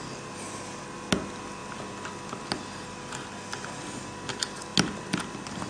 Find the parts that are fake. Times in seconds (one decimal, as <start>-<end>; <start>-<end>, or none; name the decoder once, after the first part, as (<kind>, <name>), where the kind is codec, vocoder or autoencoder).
none